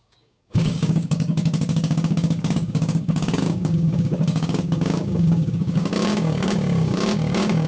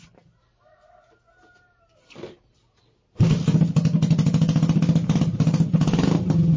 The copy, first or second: first